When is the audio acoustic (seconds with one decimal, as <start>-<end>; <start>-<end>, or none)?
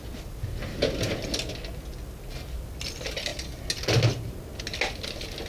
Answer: 0.0-5.5